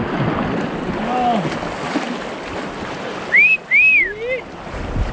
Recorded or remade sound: recorded